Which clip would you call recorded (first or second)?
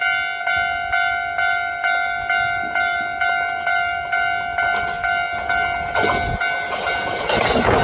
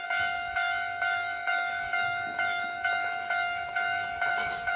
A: first